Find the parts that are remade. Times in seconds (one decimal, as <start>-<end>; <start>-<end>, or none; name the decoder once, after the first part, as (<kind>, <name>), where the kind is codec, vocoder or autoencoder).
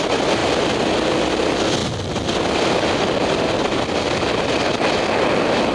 none